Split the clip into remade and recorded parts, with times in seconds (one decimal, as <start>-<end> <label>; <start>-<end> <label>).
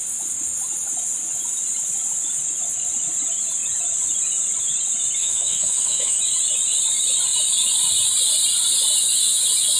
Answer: 0.0-5.2 recorded; 5.2-6.2 remade; 6.2-9.8 recorded